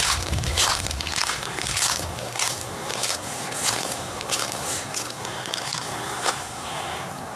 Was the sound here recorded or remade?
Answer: remade